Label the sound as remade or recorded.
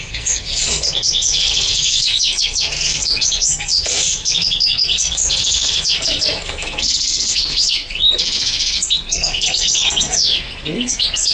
remade